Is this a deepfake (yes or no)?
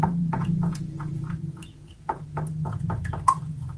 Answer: yes